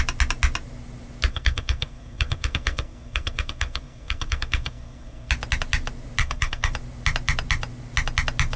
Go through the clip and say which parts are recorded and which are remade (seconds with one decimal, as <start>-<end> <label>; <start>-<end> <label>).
0.0-1.3 recorded; 1.3-5.3 remade; 5.3-6.2 recorded; 6.2-6.7 remade; 6.7-8.6 recorded